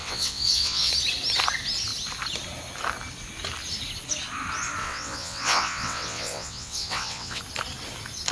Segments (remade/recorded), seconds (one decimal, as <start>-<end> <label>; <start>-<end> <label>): 0.0-0.9 remade; 0.9-4.8 recorded; 4.8-7.4 remade; 7.4-8.3 recorded